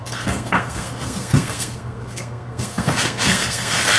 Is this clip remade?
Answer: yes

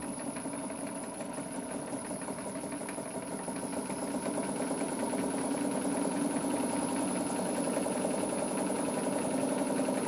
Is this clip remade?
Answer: no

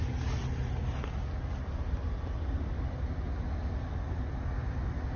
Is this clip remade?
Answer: no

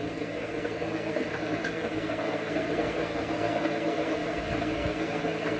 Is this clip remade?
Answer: yes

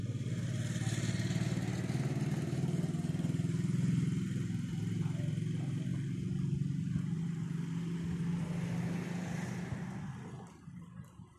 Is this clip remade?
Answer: no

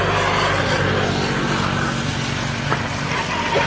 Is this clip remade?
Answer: no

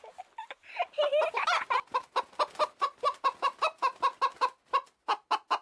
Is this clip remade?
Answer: no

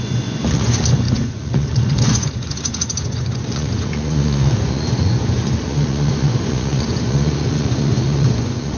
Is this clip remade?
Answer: yes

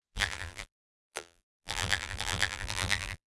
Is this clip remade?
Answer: yes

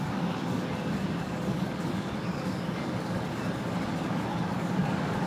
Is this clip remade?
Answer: yes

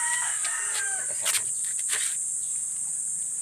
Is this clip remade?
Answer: no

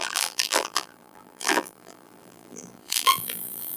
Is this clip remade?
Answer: yes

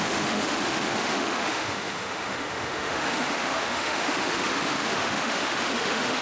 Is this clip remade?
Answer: yes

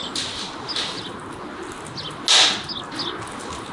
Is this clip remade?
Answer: no